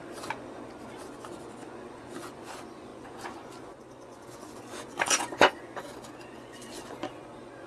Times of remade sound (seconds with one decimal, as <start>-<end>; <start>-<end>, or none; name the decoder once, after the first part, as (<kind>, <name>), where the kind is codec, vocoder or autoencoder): 0.0-7.7 (vocoder, Vocos)